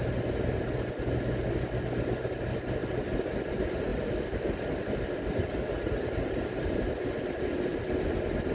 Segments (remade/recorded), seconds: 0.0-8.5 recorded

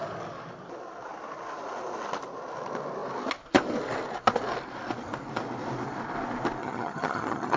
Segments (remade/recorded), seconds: 0.0-6.6 recorded; 6.6-7.6 remade

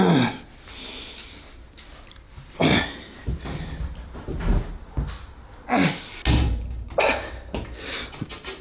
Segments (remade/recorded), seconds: 0.0-8.6 recorded

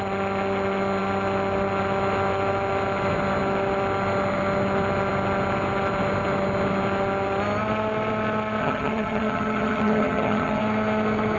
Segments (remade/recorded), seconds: 0.0-8.6 recorded; 8.6-10.6 remade; 10.6-11.4 recorded